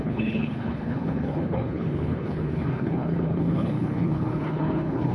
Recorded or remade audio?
remade